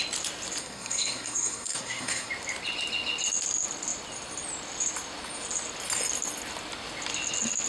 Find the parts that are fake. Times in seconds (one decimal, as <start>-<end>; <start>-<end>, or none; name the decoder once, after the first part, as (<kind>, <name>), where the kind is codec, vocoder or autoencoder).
0.6-2.3 (codec, SNAC)